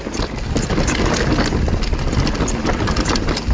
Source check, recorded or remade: recorded